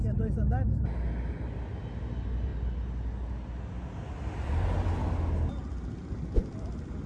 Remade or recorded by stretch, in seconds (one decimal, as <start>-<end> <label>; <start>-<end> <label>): 0.0-7.1 recorded